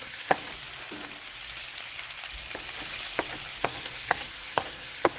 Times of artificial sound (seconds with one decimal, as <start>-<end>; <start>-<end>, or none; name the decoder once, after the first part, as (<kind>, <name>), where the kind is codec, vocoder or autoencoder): 0.0-0.5 (codec, SNAC); 3.6-5.2